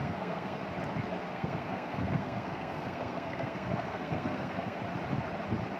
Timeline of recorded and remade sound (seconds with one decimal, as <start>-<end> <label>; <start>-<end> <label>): 0.0-0.6 remade; 0.6-1.3 recorded; 1.3-4.8 remade; 4.8-5.8 recorded